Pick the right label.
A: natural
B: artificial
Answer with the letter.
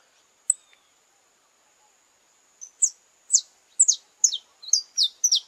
A